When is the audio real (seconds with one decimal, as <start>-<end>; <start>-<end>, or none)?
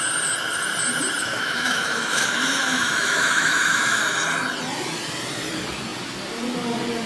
0.0-1.2; 4.0-7.1